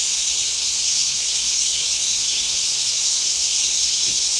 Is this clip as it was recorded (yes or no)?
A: no